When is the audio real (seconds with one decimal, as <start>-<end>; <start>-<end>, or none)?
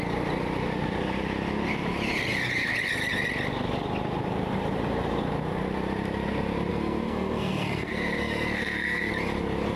0.0-6.7; 9.1-9.8